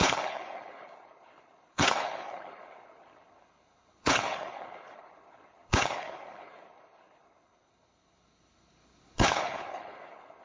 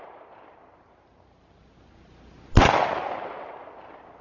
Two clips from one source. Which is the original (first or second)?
second